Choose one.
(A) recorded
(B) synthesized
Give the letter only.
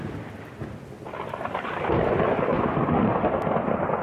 A